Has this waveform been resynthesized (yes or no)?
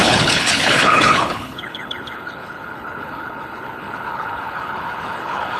yes